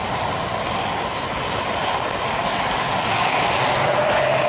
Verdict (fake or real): real